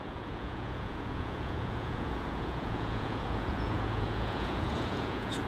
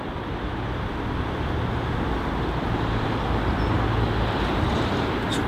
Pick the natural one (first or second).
second